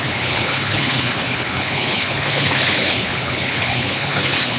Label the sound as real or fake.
fake